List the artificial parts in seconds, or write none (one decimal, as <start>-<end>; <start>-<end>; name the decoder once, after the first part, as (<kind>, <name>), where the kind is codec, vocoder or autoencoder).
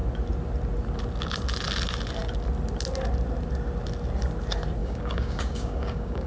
4.8-6.3 (codec, DAC)